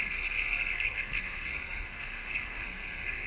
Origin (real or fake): fake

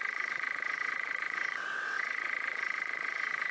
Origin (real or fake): fake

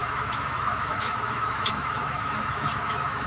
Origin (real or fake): fake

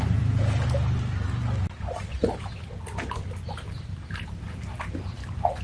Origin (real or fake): real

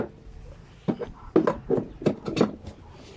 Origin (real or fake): real